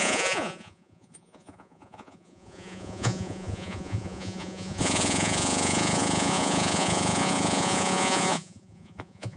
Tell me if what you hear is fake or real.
fake